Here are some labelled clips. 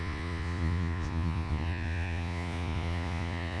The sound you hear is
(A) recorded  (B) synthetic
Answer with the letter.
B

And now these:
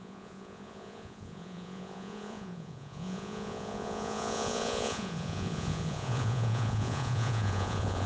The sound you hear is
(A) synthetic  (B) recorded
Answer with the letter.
A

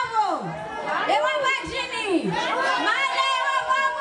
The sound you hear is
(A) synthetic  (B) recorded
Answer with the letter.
B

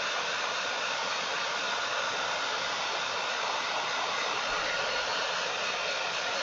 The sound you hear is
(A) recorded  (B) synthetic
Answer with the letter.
A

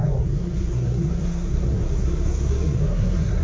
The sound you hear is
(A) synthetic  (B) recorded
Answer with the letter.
A